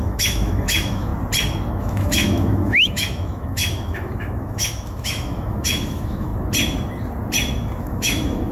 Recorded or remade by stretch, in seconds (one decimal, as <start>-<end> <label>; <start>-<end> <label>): 0.0-1.1 remade; 1.1-1.7 recorded; 1.7-6.3 remade; 6.3-7.8 recorded; 7.8-8.5 remade